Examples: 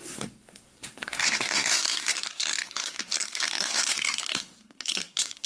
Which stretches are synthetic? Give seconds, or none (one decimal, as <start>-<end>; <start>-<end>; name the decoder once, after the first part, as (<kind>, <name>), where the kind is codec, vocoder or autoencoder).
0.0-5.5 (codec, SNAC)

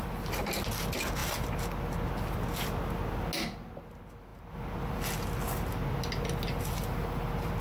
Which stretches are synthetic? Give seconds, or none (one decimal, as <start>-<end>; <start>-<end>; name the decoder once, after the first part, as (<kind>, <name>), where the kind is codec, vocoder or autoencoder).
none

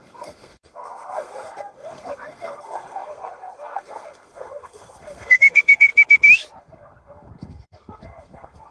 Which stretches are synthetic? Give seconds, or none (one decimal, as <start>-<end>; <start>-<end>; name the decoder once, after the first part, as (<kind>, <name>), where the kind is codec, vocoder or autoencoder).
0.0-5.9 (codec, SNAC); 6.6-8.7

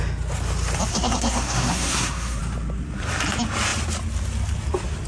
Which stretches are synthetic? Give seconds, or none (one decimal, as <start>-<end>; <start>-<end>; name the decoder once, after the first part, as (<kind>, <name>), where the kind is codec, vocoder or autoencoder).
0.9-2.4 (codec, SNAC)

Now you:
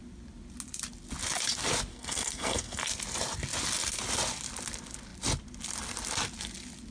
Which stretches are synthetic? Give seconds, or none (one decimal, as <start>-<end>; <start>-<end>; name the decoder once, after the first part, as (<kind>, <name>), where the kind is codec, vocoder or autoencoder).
1.9-2.8 (codec, SNAC)

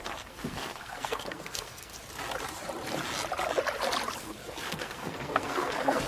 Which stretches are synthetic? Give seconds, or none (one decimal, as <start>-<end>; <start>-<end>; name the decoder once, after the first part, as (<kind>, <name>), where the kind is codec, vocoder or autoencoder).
0.0-1.9 (codec, SNAC); 4.2-6.1

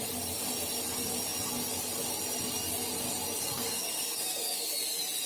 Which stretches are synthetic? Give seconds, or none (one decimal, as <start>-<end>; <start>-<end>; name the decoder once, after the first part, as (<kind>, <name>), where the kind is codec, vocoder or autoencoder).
3.4-4.7 (codec, SNAC)